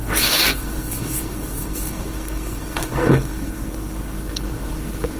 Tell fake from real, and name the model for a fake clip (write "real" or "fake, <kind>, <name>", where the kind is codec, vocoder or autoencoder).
fake, codec, SNAC